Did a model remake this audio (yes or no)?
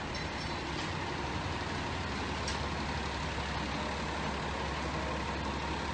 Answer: no